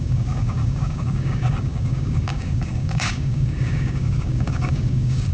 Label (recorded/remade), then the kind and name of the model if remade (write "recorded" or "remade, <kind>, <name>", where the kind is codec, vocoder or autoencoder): remade, codec, DAC